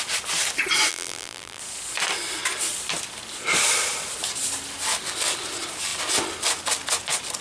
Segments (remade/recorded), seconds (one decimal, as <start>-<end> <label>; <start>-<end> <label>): 0.0-0.9 recorded; 0.9-1.6 remade; 1.6-7.4 recorded